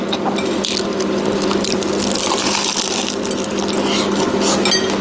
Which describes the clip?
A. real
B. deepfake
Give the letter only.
A